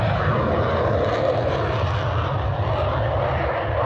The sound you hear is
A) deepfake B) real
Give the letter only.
B